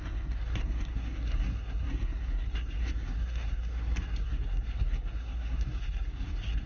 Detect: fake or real fake